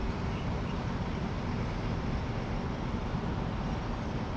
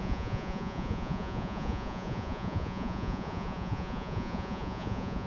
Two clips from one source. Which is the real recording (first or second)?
first